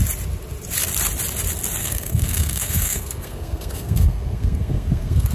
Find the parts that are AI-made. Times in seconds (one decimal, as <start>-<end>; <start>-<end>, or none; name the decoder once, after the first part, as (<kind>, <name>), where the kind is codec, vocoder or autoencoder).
1.8-5.3 (codec, SNAC)